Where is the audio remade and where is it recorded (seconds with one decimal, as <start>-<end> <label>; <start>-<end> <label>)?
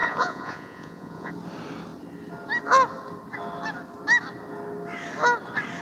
0.0-1.3 remade; 1.3-5.8 recorded